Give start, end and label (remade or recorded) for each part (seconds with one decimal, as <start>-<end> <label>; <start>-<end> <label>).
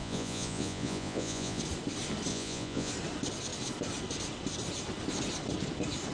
0.0-1.6 remade; 1.6-2.3 recorded; 2.3-2.9 remade; 2.9-6.1 recorded